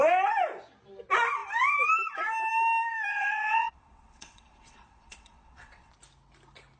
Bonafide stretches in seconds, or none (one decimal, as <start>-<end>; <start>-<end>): 0.0-3.1; 5.9-6.8